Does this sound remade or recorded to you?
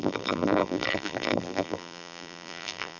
remade